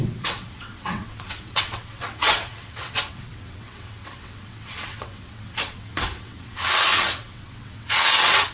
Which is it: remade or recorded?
remade